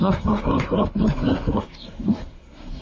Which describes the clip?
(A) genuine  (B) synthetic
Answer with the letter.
B